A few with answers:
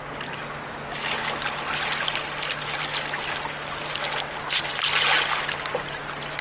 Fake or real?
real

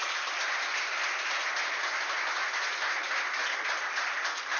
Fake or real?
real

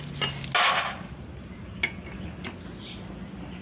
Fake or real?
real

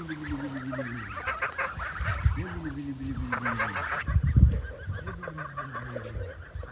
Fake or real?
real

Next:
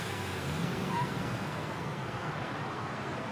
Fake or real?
fake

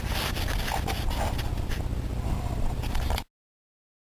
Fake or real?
real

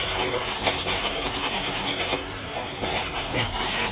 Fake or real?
fake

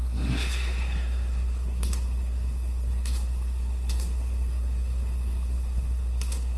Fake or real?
fake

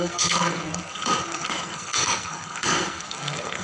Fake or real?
fake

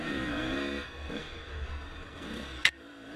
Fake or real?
fake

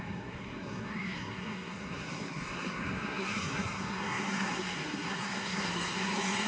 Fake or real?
fake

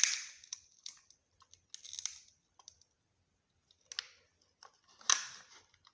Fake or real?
real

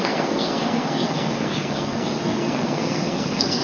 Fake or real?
fake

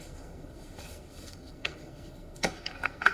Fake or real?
fake